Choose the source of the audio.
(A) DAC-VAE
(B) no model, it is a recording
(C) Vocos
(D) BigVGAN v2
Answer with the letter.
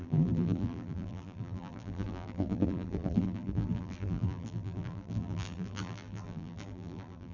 D